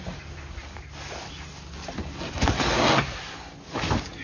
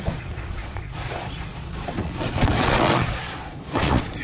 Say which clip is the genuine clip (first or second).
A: first